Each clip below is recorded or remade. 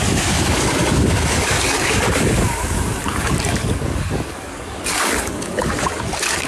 remade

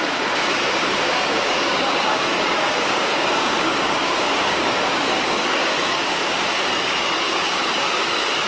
remade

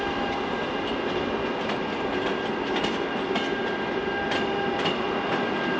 recorded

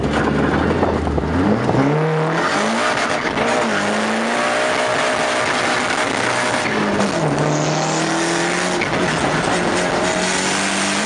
recorded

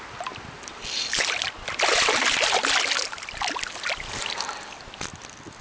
recorded